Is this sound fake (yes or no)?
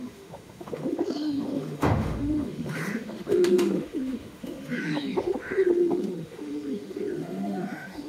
yes